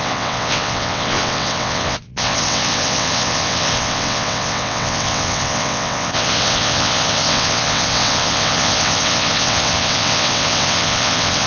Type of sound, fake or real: fake